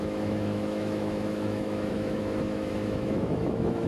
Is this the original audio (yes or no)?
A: no